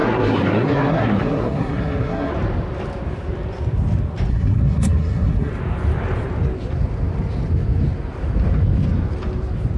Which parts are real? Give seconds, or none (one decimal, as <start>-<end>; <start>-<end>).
2.3-4.3; 5.5-9.8